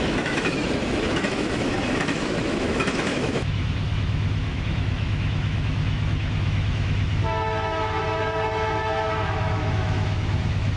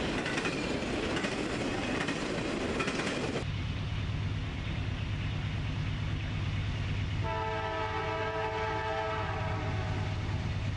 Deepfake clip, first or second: first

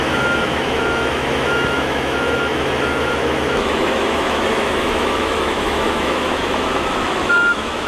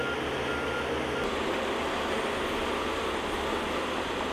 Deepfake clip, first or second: first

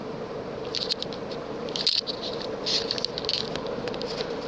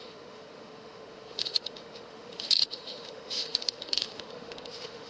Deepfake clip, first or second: second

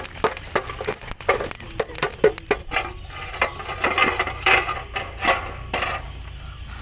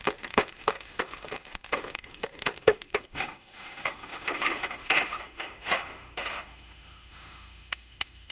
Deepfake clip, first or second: second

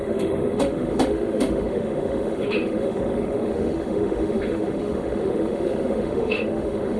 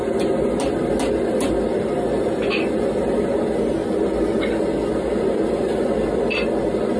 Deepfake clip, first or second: first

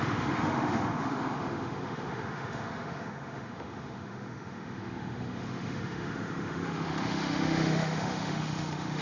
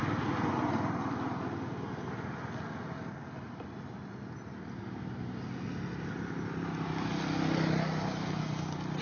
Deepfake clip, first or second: first